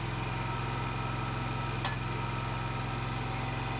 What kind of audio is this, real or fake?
real